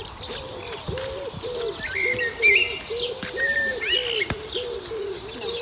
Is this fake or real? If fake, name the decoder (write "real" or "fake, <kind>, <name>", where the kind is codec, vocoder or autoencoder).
real